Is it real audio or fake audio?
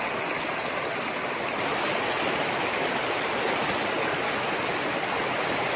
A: real